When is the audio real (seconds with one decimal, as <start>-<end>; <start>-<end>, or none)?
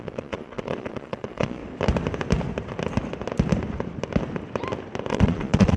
1.6-5.1